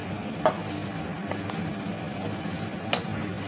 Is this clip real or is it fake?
real